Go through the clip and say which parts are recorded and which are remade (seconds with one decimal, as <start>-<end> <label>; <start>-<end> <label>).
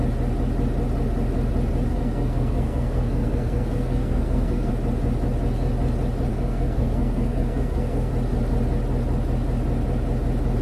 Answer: 0.0-1.9 recorded; 1.9-4.7 remade; 4.7-6.3 recorded; 6.3-8.1 remade; 8.1-10.6 recorded